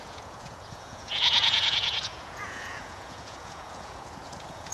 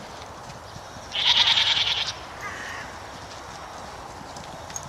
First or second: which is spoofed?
first